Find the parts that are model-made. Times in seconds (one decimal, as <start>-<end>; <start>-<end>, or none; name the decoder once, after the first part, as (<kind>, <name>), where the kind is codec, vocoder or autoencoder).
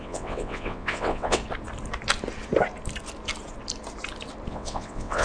0.0-1.4 (vocoder, WaveNeXt); 4.5-5.2